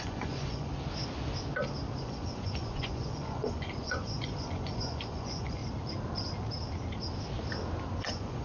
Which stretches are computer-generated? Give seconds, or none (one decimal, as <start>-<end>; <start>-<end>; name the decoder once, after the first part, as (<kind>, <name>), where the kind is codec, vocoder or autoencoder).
0.0-0.7 (vocoder, Vocos); 2.0-5.6; 8.0-8.4